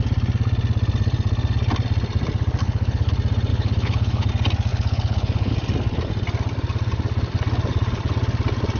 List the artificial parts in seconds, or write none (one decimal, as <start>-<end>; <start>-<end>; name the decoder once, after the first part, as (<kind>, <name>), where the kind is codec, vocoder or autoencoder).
2.6-3.1 (codec, HILCodec); 3.5-4.3; 4.7-5.5